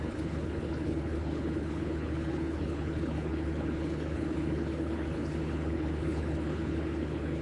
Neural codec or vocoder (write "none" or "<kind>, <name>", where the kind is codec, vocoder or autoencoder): codec, HILCodec